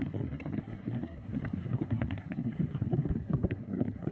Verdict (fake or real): fake